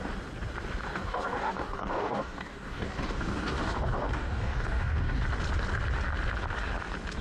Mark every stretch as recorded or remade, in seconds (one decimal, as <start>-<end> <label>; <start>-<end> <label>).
0.0-0.9 recorded; 0.9-5.2 remade; 5.2-7.2 recorded